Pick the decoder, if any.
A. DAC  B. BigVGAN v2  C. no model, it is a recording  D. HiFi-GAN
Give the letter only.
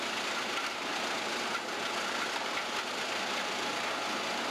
C